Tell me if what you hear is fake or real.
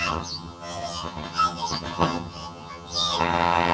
fake